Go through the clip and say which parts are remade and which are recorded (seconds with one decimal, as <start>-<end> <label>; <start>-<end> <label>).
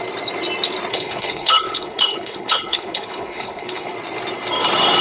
0.0-0.9 recorded; 0.9-3.9 remade; 3.9-5.0 recorded